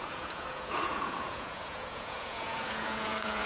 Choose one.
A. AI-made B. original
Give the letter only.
A